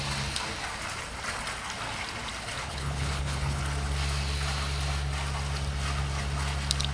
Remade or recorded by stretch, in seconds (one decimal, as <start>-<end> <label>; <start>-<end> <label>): 0.0-2.6 recorded; 2.6-3.6 remade; 3.6-6.9 recorded